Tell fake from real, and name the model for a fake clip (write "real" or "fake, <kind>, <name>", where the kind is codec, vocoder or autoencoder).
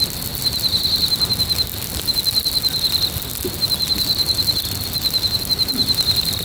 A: real